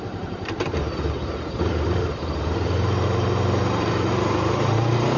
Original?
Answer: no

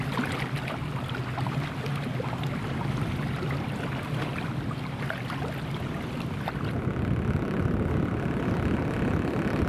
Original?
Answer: yes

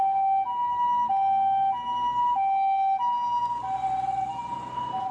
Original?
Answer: yes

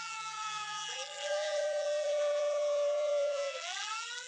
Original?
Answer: no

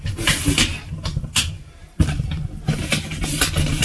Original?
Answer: yes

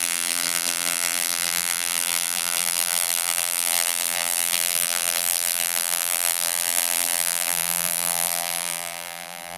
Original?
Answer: no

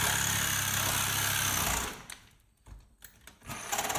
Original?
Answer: yes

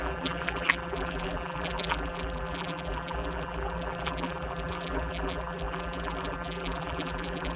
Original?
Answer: no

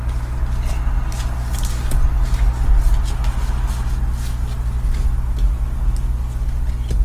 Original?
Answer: yes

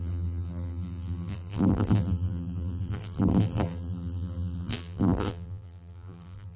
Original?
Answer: no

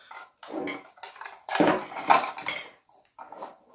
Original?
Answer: yes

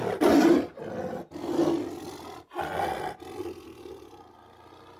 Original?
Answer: yes